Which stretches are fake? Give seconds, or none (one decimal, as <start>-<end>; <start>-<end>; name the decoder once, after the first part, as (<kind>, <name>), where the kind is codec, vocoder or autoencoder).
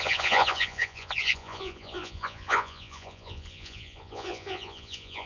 0.0-5.3 (vocoder, Vocos)